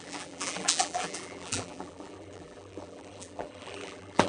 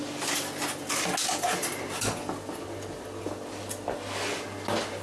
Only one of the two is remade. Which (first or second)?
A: first